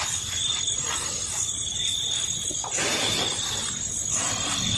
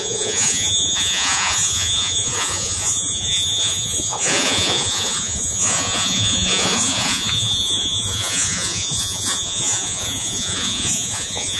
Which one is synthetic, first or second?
second